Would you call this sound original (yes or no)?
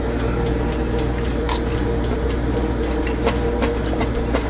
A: yes